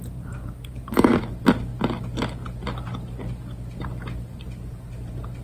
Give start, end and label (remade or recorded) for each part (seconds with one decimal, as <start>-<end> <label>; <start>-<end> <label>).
0.0-1.7 remade; 1.7-3.8 recorded; 3.8-5.4 remade